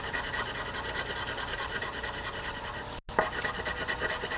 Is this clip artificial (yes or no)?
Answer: no